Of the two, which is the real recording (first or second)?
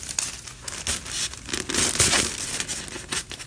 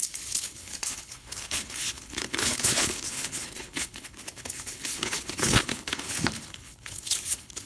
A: first